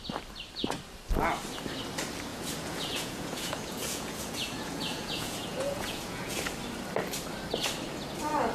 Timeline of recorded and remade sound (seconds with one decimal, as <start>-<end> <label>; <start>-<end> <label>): 0.0-2.3 recorded; 2.3-6.4 remade; 6.4-8.5 recorded